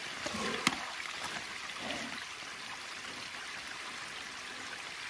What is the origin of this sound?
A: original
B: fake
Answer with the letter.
A